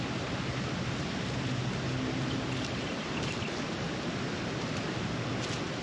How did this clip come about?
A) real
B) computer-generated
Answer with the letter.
A